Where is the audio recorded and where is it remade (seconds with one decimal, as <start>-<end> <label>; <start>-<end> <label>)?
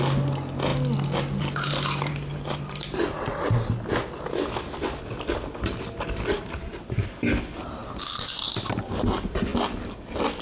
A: 0.0-10.4 recorded